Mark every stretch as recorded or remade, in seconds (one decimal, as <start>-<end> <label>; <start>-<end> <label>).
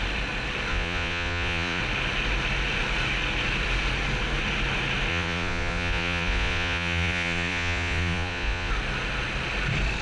0.0-0.7 recorded; 0.7-1.8 remade; 1.8-5.1 recorded; 5.1-8.7 remade; 8.7-10.0 recorded